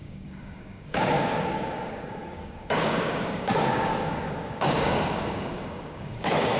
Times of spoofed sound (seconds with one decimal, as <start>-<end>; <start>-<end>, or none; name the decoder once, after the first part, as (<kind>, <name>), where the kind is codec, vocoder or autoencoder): 0.0-6.6 (codec, DAC)